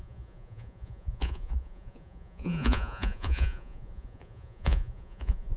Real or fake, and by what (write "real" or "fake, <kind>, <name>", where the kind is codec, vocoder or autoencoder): fake, vocoder, Vocos